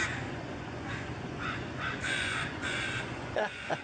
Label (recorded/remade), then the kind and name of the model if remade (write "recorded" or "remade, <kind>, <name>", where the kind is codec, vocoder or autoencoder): remade, vocoder, Vocos